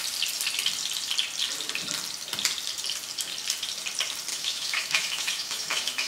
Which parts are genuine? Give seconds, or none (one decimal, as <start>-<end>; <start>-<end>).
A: 0.0-4.3

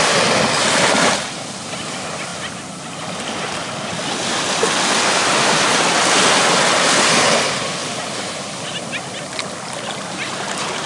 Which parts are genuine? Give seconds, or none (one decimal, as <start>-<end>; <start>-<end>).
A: 0.0-10.9

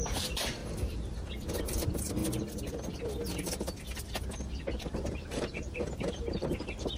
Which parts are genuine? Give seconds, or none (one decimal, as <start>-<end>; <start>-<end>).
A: 0.6-1.6; 2.2-4.9

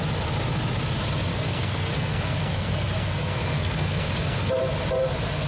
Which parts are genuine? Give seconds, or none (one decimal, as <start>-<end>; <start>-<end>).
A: 0.0-1.3; 4.6-5.5

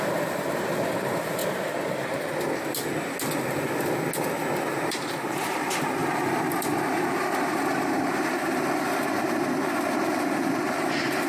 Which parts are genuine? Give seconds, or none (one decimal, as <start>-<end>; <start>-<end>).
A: 1.4-4.7

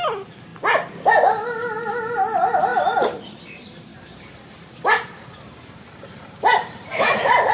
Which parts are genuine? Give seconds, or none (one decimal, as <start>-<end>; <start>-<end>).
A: 0.0-2.7; 3.2-3.9

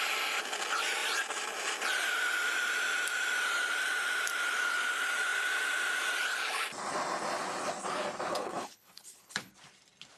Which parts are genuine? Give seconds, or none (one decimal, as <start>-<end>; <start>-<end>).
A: 0.0-8.3; 9.5-10.2